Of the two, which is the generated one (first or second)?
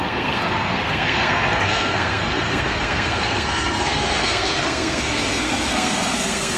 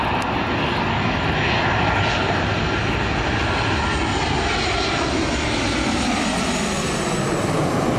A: first